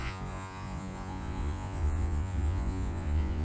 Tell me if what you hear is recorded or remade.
remade